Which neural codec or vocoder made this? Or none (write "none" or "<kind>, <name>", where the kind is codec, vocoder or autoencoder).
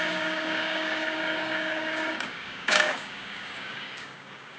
codec, DAC